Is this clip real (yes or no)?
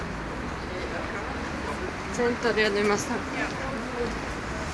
yes